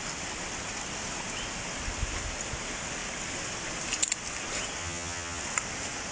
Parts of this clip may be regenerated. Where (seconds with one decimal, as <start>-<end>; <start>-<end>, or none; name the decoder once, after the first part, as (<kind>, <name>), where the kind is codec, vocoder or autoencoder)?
4.8-5.4 (vocoder, HiFi-GAN)